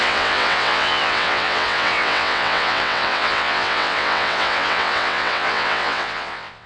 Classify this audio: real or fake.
fake